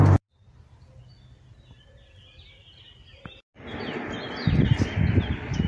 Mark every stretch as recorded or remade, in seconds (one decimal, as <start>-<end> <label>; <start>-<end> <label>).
0.0-5.7 recorded